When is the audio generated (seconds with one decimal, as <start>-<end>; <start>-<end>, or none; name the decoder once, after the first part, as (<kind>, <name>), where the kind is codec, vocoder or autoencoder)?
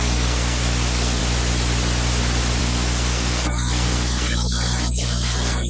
0.0-1.2 (codec, SNAC); 2.6-5.7